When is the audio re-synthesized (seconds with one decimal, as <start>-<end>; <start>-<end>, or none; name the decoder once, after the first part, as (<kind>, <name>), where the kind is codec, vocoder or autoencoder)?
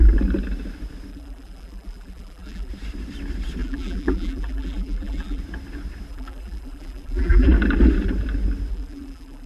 1.1-2.7 (vocoder, BigVGAN v2); 3.6-5.4; 6.1-7.5; 8.7-9.5